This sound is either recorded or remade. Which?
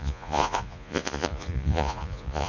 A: remade